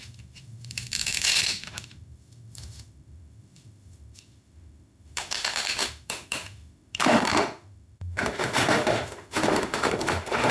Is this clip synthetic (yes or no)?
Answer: yes